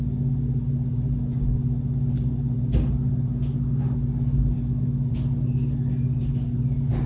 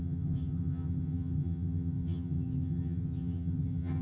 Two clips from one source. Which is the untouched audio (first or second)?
first